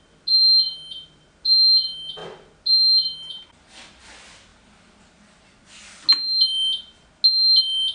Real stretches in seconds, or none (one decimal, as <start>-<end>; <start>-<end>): 0.0-7.9